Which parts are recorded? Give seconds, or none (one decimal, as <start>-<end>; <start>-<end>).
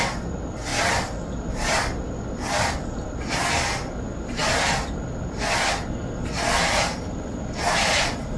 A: 0.0-8.4